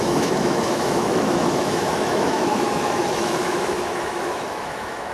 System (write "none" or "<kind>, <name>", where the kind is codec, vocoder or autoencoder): autoencoder, DAC-VAE